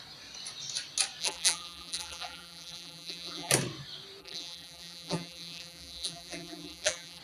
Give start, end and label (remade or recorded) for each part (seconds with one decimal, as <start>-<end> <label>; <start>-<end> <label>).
0.0-1.2 recorded; 1.2-3.5 remade; 3.5-4.2 recorded; 4.2-7.2 remade